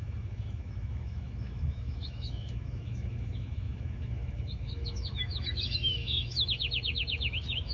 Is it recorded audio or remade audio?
remade